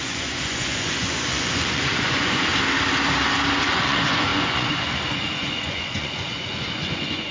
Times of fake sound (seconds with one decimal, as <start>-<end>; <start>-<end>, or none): 0.0-2.5; 3.6-7.3